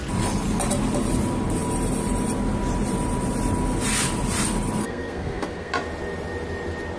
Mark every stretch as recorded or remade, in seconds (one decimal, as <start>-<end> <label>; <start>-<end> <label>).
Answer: 0.0-4.8 recorded; 4.8-5.7 remade; 5.7-7.0 recorded